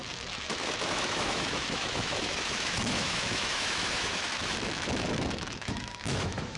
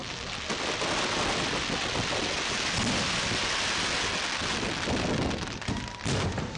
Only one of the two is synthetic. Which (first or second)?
first